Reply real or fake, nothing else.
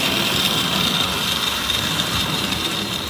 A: fake